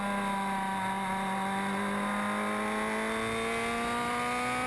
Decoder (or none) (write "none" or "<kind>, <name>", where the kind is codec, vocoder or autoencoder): none